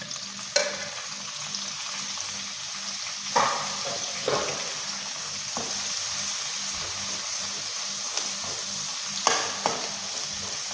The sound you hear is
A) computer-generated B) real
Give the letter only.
B